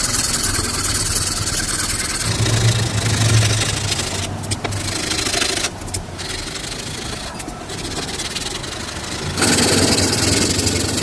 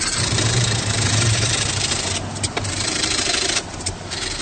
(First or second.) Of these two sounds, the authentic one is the first